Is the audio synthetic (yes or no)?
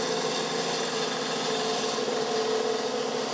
no